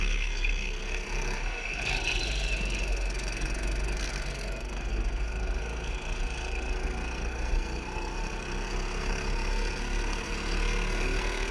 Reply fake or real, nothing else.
fake